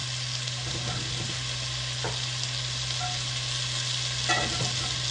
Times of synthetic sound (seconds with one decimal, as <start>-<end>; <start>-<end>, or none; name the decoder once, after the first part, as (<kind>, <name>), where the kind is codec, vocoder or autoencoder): none